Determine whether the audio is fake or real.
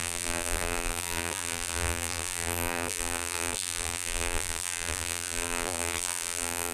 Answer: fake